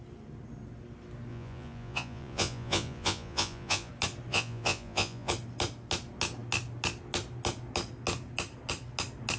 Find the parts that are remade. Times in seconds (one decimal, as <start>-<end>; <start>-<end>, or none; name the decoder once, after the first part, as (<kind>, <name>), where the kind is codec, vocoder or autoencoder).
1.3-3.9 (vocoder, Vocos); 4.3-5.3